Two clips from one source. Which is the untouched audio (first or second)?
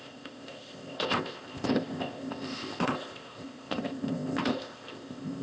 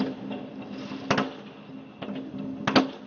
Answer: second